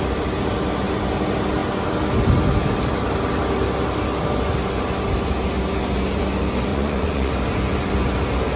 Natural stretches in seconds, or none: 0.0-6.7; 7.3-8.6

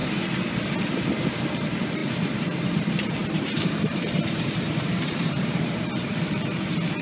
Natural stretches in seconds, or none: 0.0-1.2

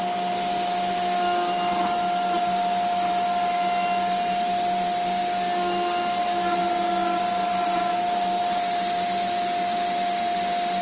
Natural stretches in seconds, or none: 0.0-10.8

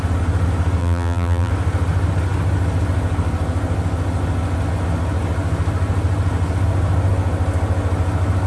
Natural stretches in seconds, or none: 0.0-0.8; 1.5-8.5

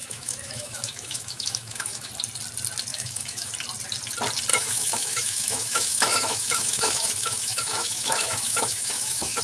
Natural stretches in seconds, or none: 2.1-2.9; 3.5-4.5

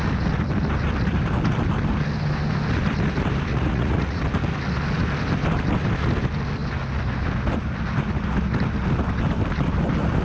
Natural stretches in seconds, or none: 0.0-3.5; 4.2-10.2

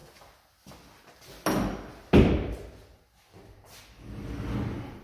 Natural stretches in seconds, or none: 0.0-5.0